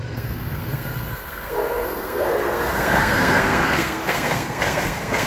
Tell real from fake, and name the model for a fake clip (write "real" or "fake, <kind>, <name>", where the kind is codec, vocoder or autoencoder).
fake, codec, SNAC